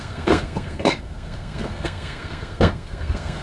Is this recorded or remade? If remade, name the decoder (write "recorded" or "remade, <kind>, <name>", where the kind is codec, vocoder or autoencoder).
remade, codec, SNAC